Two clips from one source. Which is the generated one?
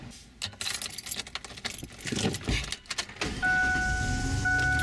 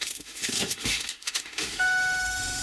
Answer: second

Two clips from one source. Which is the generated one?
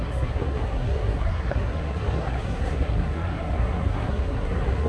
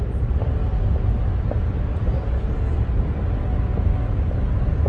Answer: first